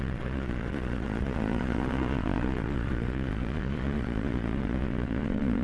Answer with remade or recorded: remade